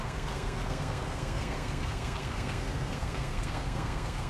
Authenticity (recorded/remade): remade